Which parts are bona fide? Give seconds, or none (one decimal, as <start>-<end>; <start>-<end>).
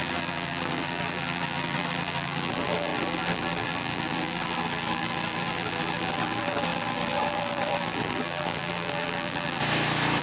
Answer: 9.6-10.2